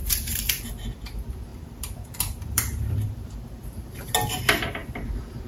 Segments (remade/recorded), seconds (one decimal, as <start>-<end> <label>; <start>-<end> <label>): 0.0-0.6 remade; 0.6-1.5 recorded; 1.5-3.4 remade; 3.4-5.5 recorded